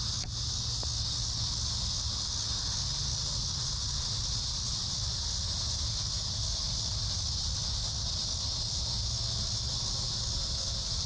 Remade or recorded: recorded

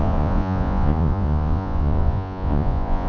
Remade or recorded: remade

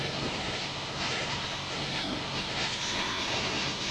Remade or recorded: remade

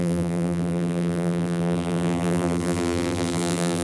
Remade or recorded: remade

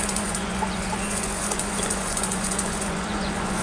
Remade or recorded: remade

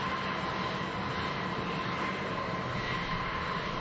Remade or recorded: recorded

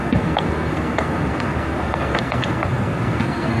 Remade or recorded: remade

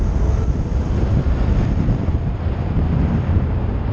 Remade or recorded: recorded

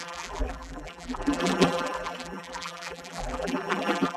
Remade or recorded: remade